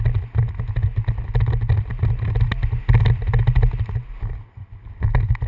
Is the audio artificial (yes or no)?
no